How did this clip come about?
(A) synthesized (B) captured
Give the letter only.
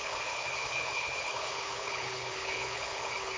A